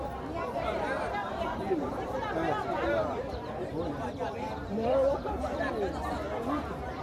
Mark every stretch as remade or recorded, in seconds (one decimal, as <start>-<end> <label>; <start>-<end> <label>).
0.0-1.2 recorded; 1.2-2.2 remade; 2.2-3.0 recorded; 3.0-3.7 remade; 3.7-4.6 recorded; 4.6-5.7 remade; 5.7-7.0 recorded